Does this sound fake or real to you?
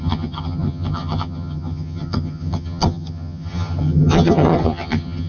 fake